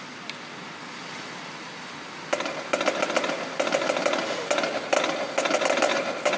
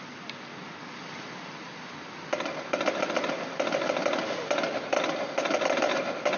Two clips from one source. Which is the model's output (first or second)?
second